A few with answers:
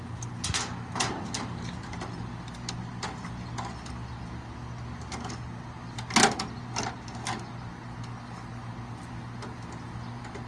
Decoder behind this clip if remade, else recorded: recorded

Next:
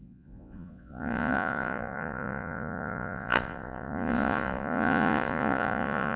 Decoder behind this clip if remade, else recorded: remade, vocoder, Vocos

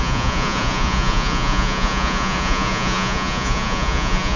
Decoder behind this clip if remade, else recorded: remade, vocoder, Vocos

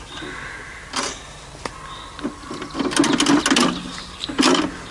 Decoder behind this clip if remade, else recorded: recorded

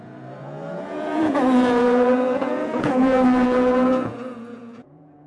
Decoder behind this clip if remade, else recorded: remade, vocoder, Vocos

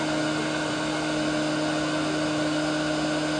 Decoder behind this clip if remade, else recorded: recorded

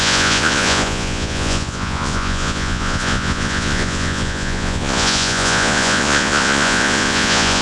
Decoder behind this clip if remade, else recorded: remade, vocoder, Vocos